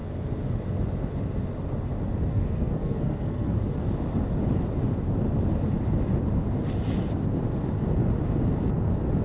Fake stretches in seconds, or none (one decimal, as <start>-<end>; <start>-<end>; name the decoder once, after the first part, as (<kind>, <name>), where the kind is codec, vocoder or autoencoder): 2.3-3.5 (codec, SNAC)